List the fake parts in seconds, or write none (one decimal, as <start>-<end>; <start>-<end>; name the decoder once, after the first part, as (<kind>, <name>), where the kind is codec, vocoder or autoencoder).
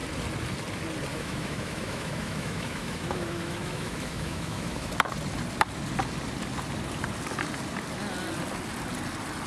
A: 1.1-4.9 (autoencoder, DAC-VAE)